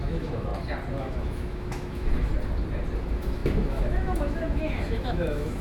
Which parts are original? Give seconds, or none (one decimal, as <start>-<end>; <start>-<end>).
0.5-1.0; 2.3-3.0